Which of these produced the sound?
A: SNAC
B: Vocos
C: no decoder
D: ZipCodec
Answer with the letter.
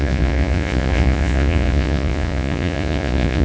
B